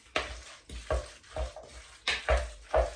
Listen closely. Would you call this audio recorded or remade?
recorded